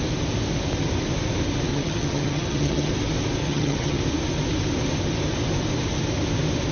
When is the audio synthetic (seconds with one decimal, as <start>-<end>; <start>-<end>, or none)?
1.7-2.9; 3.4-4.0

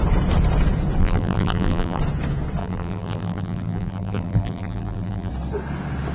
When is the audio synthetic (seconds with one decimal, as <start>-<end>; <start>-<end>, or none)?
1.0-2.0; 2.6-5.3

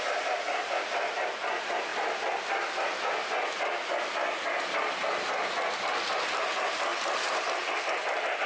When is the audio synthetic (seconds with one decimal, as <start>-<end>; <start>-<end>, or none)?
6.9-7.7

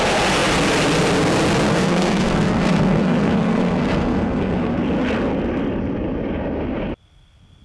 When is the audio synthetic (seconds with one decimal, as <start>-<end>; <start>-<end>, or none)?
1.7-4.8

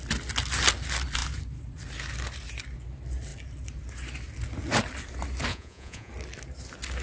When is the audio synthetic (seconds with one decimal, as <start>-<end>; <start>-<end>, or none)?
5.5-6.1

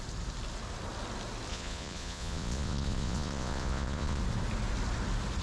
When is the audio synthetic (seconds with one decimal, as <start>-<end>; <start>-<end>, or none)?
1.5-4.2

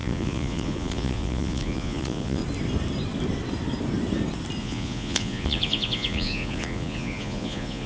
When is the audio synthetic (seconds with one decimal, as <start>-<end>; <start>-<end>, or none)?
0.0-2.4; 4.6-7.9

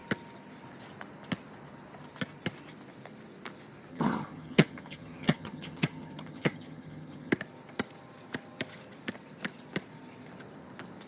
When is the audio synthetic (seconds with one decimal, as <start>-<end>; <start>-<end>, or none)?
3.9-7.3